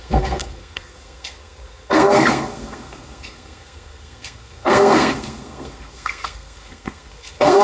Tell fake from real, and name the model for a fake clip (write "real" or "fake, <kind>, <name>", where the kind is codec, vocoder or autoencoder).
fake, codec, SNAC